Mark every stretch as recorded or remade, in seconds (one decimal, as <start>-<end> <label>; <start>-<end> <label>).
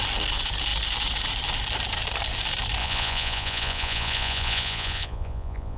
0.0-2.8 recorded; 2.8-5.8 remade